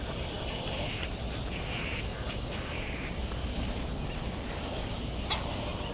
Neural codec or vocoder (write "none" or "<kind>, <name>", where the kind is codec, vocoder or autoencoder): none